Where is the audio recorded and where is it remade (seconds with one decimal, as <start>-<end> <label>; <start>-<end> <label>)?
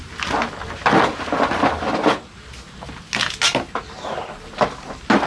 0.0-5.3 recorded